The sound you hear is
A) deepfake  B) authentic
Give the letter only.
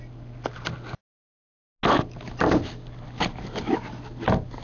B